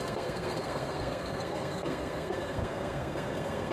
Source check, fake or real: fake